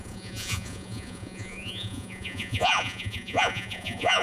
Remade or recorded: remade